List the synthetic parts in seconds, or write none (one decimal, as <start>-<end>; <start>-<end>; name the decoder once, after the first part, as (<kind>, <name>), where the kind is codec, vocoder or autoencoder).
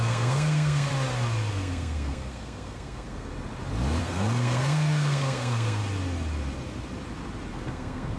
0.0-0.9 (codec, SNAC); 1.5-3.3; 4.0-5.8; 7.5-8.2